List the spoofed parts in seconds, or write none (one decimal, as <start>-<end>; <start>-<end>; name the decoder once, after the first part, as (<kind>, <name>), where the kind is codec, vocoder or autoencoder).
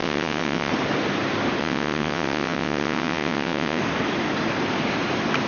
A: 0.0-0.7 (vocoder, WaveNeXt); 1.6-3.8